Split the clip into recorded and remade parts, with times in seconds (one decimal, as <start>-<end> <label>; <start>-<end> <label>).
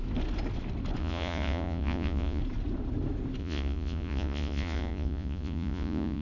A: 0.0-1.0 recorded; 1.0-2.4 remade; 2.4-3.4 recorded; 3.4-6.2 remade